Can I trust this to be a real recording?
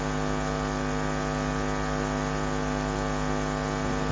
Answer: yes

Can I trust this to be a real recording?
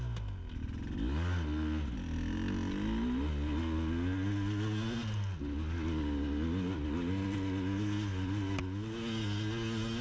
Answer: yes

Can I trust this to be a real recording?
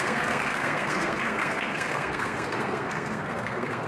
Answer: no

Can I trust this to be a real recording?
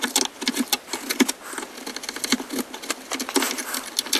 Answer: yes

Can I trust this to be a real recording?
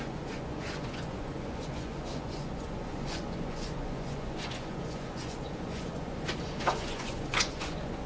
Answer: no